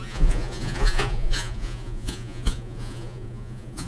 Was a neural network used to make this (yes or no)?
yes